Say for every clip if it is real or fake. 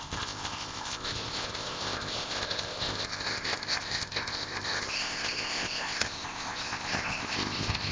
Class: fake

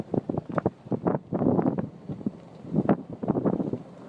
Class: fake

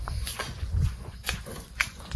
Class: fake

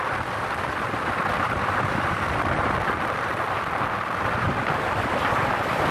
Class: fake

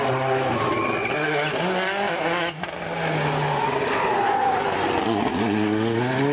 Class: real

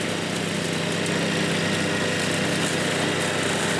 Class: real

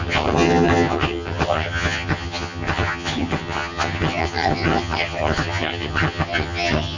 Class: fake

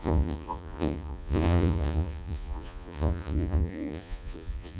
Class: fake